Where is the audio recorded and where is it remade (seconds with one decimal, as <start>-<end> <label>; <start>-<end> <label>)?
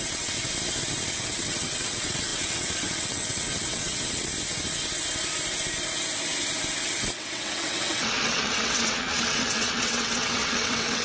0.0-0.4 remade; 0.4-1.1 recorded; 1.1-4.3 remade; 4.3-6.8 recorded; 6.8-11.0 remade